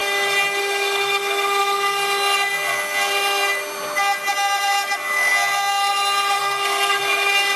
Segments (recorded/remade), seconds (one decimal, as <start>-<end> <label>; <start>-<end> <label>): 0.0-6.4 recorded; 6.4-7.0 remade; 7.0-7.6 recorded